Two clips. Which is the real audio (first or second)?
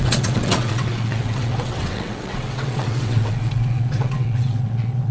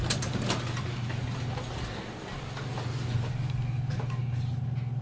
second